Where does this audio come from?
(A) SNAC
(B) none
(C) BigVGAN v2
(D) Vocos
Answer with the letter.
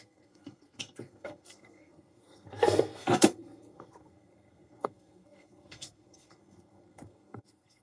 A